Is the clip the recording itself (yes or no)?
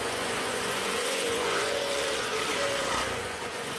no